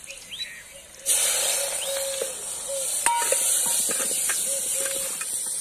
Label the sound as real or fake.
real